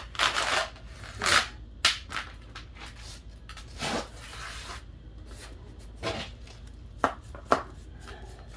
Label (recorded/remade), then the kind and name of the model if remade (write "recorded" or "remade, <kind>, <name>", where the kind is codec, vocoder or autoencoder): recorded